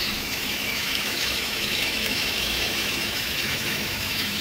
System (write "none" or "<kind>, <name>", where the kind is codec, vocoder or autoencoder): autoencoder, DAC-VAE